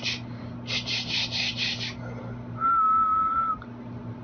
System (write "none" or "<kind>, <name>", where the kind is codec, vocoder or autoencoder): none